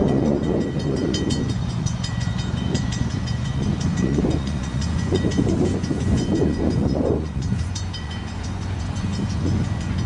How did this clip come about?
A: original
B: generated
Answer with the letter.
B